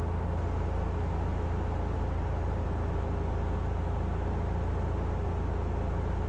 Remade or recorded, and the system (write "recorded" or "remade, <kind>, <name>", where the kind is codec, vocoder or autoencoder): recorded